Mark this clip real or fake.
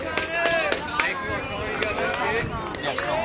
real